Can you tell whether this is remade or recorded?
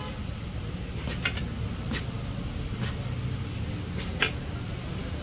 recorded